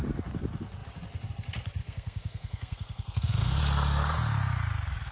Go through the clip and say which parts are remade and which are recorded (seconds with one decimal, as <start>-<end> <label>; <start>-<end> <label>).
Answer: 0.0-1.8 recorded; 1.8-3.6 remade; 3.6-5.1 recorded